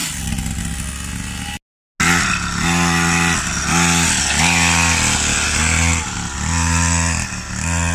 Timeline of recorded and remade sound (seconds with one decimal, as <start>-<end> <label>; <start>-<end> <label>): 0.0-0.6 remade; 0.6-7.9 recorded